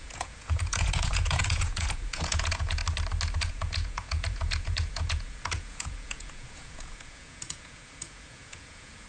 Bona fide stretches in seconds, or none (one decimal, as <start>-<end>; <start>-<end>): 2.8-3.4